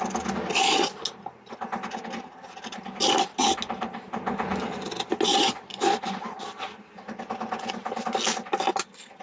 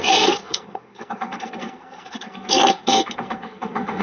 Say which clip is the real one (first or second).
first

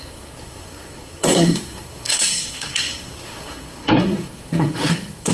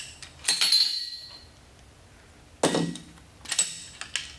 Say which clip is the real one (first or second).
second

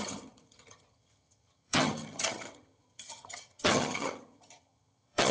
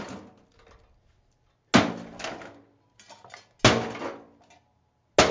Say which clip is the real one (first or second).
second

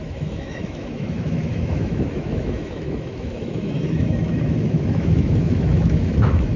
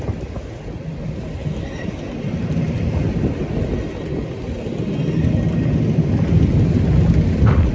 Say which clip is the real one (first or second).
second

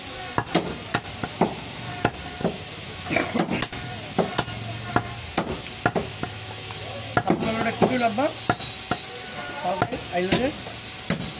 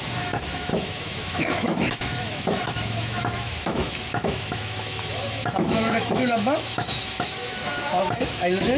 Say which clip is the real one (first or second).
first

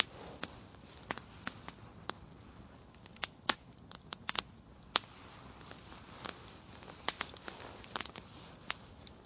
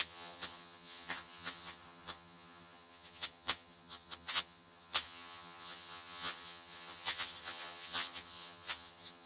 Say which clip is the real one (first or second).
first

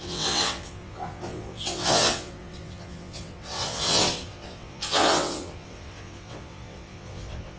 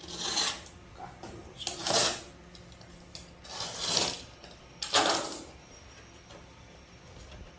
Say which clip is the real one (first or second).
second